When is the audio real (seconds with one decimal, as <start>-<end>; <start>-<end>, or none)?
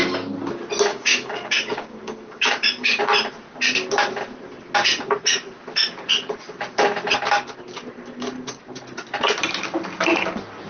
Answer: 0.0-0.9; 3.0-10.7